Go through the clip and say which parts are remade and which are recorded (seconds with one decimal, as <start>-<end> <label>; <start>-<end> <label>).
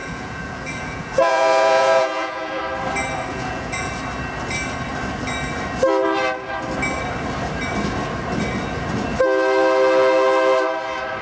0.0-2.6 remade; 2.6-3.3 recorded; 3.3-3.9 remade; 3.9-11.2 recorded